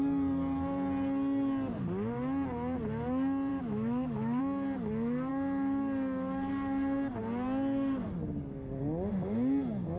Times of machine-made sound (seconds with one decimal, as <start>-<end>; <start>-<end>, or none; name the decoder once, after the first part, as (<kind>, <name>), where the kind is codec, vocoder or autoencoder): 3.5-4.4 (autoencoder, DAC-VAE)